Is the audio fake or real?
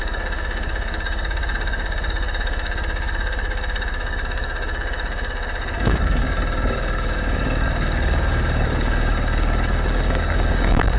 fake